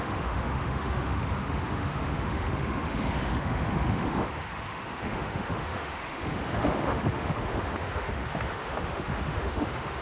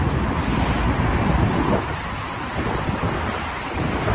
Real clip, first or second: second